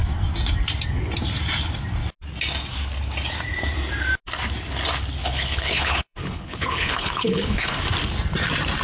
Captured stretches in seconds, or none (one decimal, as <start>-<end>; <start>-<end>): 0.0-5.2; 7.8-8.8